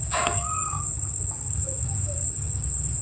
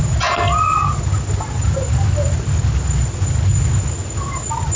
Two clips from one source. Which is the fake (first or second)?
first